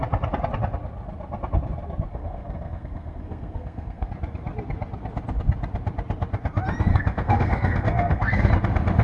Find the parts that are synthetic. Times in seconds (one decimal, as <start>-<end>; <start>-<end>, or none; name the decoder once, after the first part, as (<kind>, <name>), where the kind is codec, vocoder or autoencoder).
2.1-4.1 (codec, SNAC); 6.9-8.5